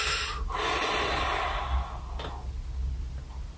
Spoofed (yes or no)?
no